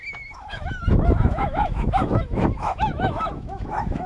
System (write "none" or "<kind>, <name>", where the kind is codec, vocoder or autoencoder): autoencoder, DAC-VAE